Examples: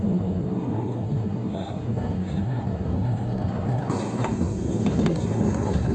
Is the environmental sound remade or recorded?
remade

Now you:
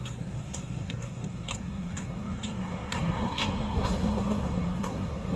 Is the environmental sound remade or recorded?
remade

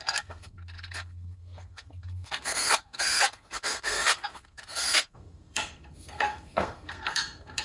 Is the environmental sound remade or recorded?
remade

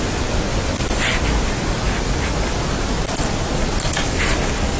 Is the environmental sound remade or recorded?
recorded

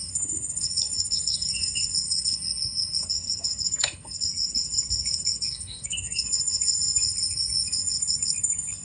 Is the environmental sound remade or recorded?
remade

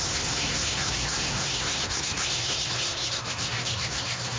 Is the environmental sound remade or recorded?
remade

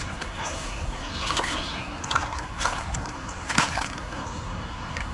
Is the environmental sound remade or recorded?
remade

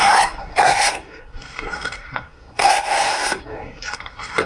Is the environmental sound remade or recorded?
remade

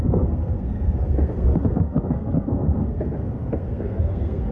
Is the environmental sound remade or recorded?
remade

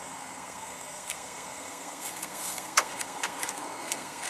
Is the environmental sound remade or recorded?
remade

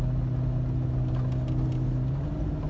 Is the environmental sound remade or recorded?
recorded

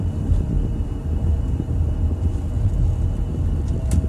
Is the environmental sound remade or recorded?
recorded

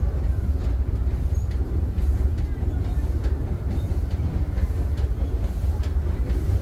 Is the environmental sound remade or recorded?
recorded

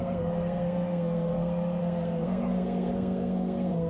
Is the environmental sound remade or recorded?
remade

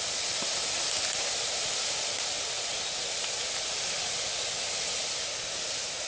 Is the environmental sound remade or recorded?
recorded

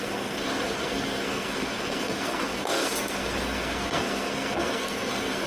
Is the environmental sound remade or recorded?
remade